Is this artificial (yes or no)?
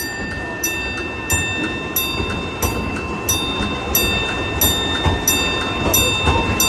no